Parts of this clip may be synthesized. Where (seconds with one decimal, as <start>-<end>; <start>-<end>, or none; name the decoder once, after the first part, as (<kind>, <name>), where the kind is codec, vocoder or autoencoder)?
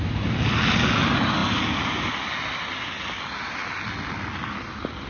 none